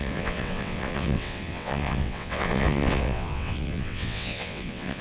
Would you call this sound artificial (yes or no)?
yes